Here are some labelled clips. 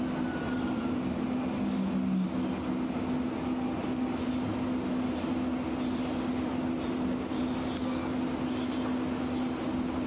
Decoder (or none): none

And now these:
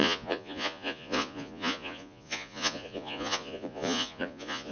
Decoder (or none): vocoder, Vocos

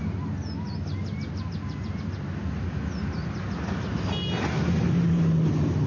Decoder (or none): none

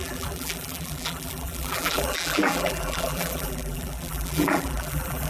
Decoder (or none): vocoder, BigVGAN v2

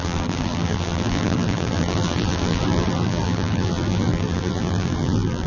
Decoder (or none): vocoder, BigVGAN v2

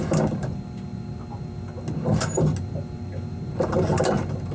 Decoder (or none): none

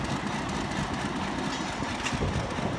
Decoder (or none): none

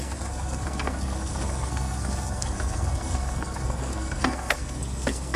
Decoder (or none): codec, SNAC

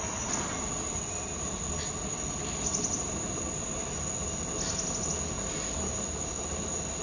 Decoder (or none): none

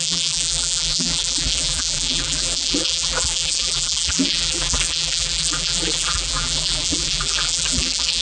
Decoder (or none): vocoder, BigVGAN v2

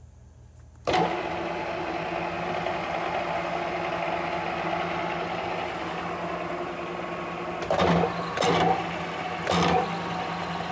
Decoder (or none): none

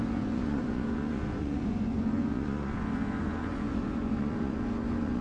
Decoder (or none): vocoder, Vocos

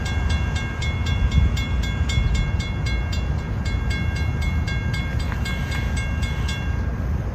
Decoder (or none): none